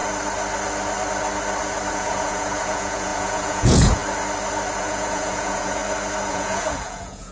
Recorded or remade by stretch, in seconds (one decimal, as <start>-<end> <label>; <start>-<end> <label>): 0.0-1.9 recorded; 1.9-4.0 remade; 4.0-4.8 recorded; 4.8-5.8 remade; 5.8-6.3 recorded; 6.3-7.3 remade

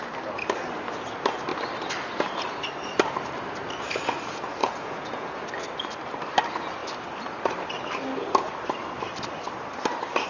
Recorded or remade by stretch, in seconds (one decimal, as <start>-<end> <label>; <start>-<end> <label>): 0.0-4.6 recorded; 4.6-5.4 remade; 5.4-10.3 recorded

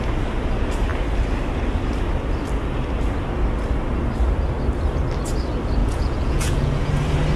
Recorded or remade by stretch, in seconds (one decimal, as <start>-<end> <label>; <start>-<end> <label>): 0.0-5.8 recorded; 5.8-6.9 remade; 6.9-7.4 recorded

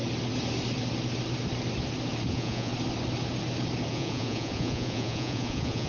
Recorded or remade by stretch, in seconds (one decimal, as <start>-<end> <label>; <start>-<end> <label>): 0.0-2.3 recorded; 2.3-2.7 remade; 2.7-3.9 recorded; 3.9-5.9 remade